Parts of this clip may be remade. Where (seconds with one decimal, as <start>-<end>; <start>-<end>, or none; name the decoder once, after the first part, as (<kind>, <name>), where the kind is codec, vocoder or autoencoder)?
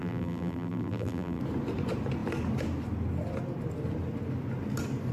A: 0.0-1.4 (vocoder, BigVGAN v2)